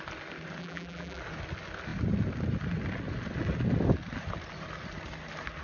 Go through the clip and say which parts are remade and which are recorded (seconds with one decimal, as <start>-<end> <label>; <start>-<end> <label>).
0.0-0.6 recorded; 0.6-1.2 remade; 1.2-5.6 recorded